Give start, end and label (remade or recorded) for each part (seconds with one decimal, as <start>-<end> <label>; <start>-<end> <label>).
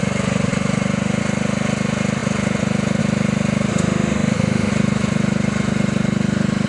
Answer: 0.0-3.7 recorded; 3.7-4.7 remade; 4.7-6.7 recorded